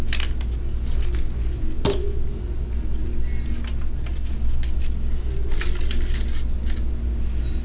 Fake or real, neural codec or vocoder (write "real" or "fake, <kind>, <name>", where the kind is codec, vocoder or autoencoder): real